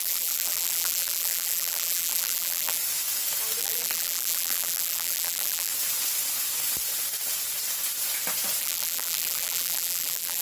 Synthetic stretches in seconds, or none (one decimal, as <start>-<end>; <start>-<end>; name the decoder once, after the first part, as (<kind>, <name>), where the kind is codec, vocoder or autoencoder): 0.0-2.8 (vocoder, BigVGAN v2); 3.6-5.7; 8.6-10.4